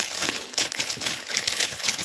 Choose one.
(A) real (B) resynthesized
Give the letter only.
B